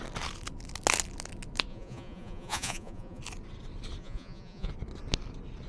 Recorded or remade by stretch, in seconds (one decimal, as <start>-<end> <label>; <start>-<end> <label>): 0.0-1.7 recorded; 1.7-3.2 remade; 3.2-4.0 recorded; 4.0-4.7 remade; 4.7-5.7 recorded